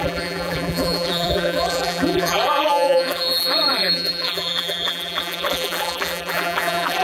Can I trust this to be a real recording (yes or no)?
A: no